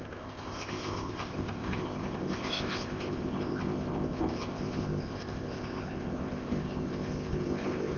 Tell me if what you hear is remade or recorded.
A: remade